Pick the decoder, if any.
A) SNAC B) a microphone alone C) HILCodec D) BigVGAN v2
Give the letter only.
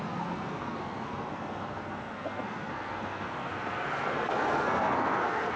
A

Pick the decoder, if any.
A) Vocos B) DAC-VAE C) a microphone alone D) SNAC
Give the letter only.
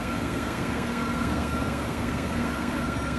D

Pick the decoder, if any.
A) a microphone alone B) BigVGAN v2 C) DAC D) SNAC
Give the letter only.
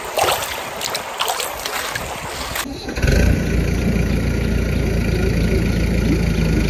A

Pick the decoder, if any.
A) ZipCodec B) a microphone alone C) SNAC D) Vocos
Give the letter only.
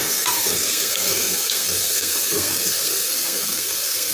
C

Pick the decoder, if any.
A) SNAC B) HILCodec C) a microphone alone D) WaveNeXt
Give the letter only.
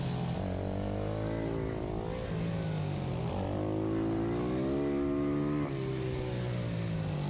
C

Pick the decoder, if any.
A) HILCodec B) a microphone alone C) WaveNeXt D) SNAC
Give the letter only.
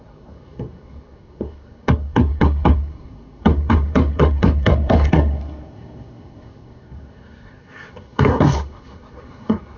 D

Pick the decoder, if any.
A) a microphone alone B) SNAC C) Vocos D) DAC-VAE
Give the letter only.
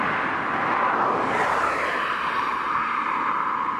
A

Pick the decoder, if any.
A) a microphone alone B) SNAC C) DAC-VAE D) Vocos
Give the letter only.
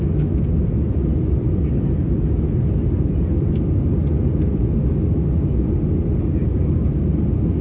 A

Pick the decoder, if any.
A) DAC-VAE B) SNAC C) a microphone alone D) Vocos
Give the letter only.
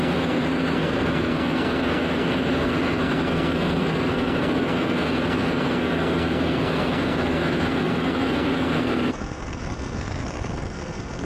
B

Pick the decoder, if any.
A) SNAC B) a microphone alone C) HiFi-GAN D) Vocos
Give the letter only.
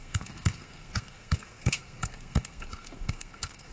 A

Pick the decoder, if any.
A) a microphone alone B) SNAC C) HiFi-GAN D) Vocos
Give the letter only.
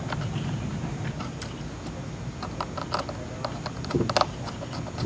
A